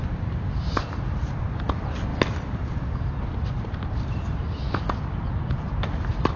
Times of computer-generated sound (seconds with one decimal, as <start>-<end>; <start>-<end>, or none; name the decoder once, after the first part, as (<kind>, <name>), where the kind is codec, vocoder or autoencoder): 0.0-2.1 (vocoder, BigVGAN v2); 3.5-6.4